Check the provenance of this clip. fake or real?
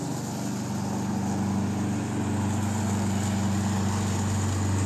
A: real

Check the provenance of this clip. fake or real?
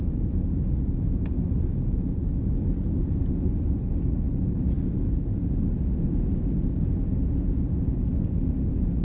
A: real